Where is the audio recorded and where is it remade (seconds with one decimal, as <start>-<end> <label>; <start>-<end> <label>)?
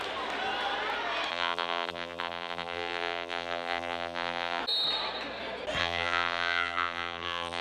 0.0-1.3 recorded; 1.3-4.6 remade; 4.6-5.8 recorded; 5.8-7.6 remade